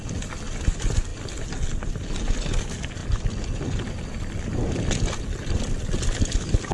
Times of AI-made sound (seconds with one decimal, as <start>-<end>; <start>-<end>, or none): none